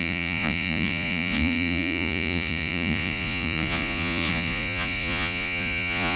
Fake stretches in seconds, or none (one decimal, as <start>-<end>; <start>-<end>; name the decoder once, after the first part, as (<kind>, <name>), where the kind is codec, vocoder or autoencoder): 0.0-6.2 (vocoder, Vocos)